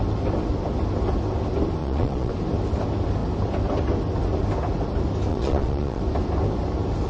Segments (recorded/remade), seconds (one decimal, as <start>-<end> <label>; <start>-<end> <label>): 0.0-1.8 recorded; 1.8-2.3 remade; 2.3-5.3 recorded; 5.3-6.0 remade; 6.0-7.1 recorded

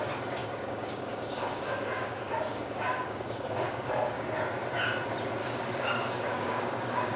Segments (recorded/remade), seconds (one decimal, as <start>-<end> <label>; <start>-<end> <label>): 0.0-0.4 recorded; 0.4-4.4 remade; 4.4-5.4 recorded; 5.4-7.2 remade

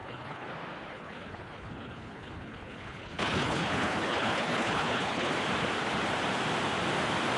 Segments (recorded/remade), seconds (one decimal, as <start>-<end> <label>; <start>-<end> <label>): 0.0-0.5 remade; 0.5-0.9 recorded; 0.9-5.3 remade; 5.3-7.4 recorded